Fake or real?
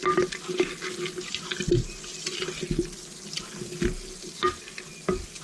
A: real